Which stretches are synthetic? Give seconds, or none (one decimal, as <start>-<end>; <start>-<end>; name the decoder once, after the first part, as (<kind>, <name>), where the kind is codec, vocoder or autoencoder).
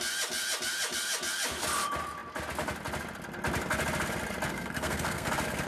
4.5-5.3 (codec, SNAC)